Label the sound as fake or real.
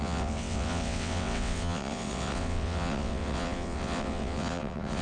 fake